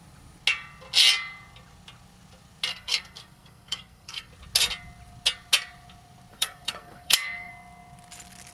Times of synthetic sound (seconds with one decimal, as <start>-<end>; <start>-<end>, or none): 2.7-4.3; 6.3-7.5